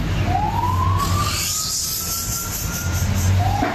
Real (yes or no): yes